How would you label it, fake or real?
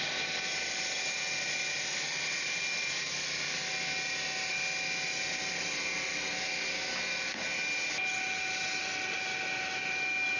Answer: real